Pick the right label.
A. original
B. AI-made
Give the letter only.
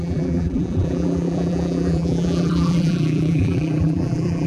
B